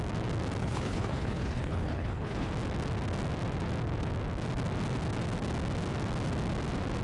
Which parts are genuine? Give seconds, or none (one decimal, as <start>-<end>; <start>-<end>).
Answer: 0.0-0.6; 2.5-7.0